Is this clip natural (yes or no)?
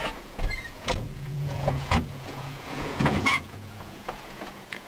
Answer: no